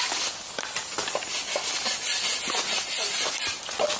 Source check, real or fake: real